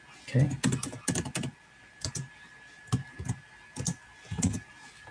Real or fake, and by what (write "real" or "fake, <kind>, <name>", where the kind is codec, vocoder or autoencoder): real